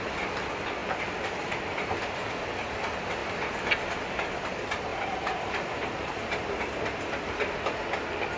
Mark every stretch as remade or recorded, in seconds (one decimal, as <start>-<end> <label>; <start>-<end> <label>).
0.0-0.8 recorded; 0.8-1.6 remade; 1.6-4.9 recorded; 4.9-6.1 remade; 6.1-8.4 recorded